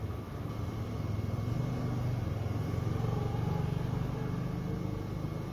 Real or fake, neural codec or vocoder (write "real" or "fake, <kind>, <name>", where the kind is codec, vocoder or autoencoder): real